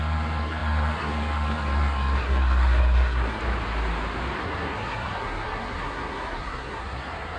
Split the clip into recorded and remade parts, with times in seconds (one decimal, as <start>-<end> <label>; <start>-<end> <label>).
0.0-3.4 remade; 3.4-4.4 recorded; 4.4-7.4 remade